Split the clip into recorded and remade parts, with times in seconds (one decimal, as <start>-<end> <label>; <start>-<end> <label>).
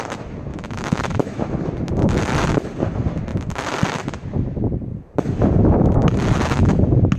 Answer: 0.0-0.5 recorded; 0.5-1.4 remade; 1.4-7.2 recorded